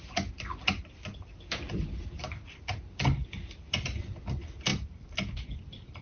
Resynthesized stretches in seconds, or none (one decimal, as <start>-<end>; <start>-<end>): none